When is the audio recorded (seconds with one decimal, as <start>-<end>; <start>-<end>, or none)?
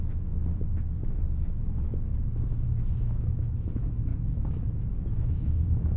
0.4-3.0